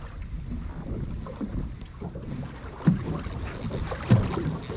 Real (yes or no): yes